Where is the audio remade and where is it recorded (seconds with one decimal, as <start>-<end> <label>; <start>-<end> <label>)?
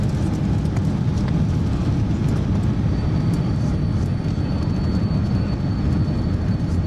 0.0-6.9 recorded